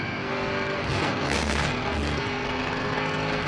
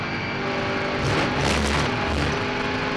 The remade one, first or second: first